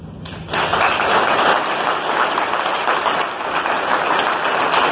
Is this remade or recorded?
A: recorded